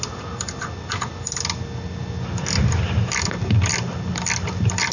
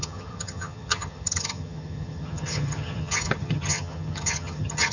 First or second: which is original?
first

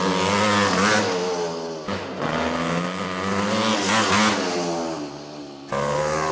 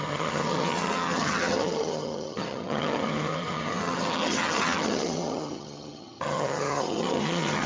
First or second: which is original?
first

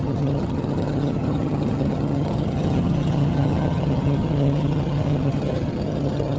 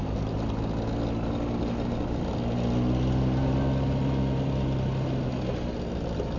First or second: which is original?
second